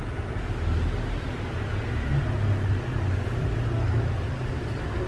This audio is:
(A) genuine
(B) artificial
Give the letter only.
A